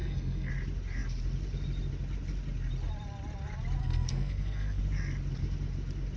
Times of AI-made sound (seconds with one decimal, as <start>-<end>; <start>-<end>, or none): 0.0-0.5; 3.8-4.8